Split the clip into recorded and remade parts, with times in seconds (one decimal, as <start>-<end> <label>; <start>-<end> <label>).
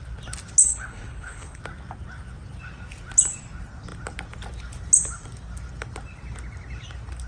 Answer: 0.0-0.6 recorded; 0.6-1.6 remade; 1.6-7.3 recorded